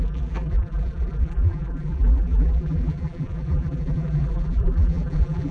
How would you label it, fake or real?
fake